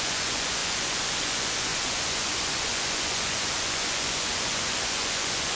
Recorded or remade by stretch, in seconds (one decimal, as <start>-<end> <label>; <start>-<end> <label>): 0.0-5.5 remade